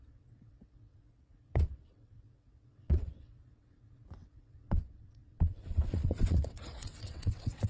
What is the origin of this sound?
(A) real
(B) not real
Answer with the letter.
B